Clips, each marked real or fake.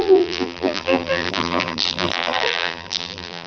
fake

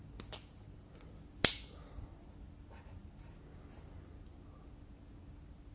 real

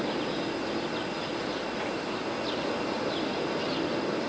real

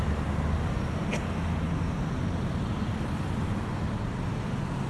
real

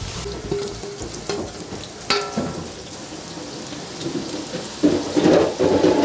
real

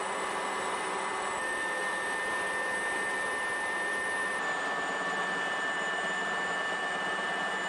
real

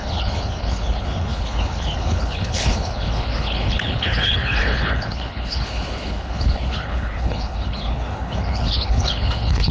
fake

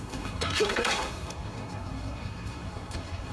fake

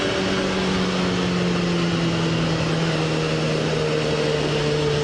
real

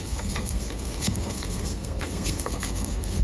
fake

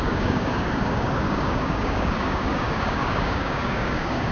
fake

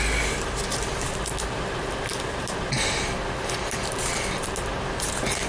real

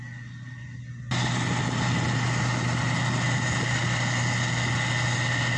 real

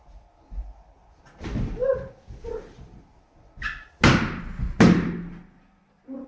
real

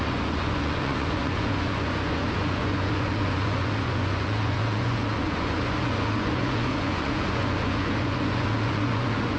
fake